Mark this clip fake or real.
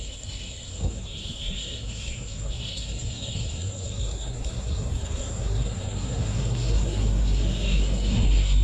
fake